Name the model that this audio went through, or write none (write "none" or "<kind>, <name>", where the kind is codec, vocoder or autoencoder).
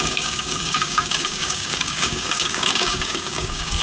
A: codec, DAC